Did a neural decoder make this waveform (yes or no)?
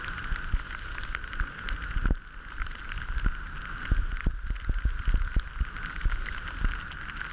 no